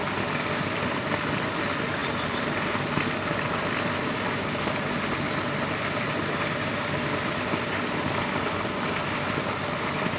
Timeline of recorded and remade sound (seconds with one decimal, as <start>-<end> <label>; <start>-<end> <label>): 0.0-10.2 recorded